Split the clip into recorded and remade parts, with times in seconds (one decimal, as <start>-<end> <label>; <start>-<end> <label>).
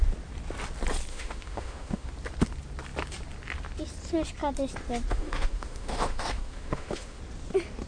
0.0-1.1 recorded; 1.1-2.1 remade; 2.1-5.1 recorded; 5.1-7.2 remade; 7.2-7.9 recorded